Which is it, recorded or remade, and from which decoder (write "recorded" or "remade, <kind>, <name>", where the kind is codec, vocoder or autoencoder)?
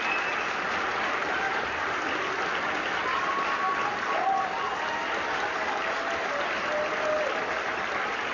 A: recorded